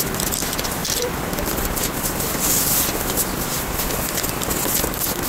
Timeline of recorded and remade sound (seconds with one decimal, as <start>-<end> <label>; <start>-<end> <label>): 0.0-0.8 recorded; 0.8-3.0 remade; 3.0-5.3 recorded